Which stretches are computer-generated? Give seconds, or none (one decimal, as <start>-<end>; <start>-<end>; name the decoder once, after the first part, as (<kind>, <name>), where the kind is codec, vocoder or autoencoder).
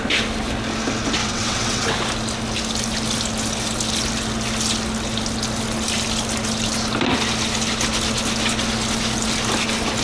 1.2-1.9 (vocoder, WaveNeXt)